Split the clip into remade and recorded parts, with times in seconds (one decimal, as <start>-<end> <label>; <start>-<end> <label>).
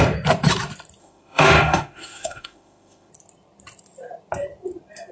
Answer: 0.0-1.0 recorded; 1.0-3.1 remade; 3.1-5.1 recorded